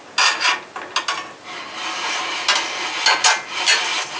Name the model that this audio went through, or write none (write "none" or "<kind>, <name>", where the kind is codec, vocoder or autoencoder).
none